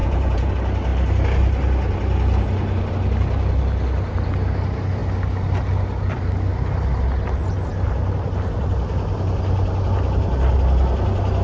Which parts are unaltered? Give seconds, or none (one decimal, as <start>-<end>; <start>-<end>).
0.5-11.4